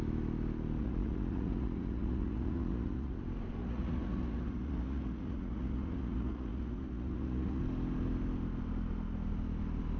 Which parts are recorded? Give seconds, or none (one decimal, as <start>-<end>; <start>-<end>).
0.0-0.8; 3.2-3.6; 7.6-10.0